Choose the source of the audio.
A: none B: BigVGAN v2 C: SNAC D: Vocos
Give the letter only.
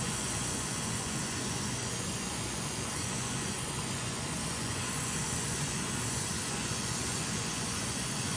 D